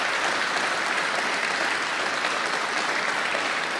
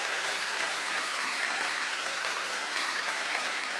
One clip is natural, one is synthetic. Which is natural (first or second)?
first